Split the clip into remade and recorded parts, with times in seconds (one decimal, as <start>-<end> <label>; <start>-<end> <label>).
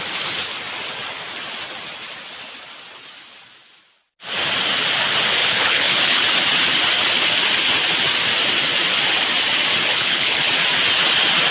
0.0-5.4 recorded; 5.4-6.2 remade; 6.2-9.9 recorded; 9.9-10.5 remade; 10.5-11.5 recorded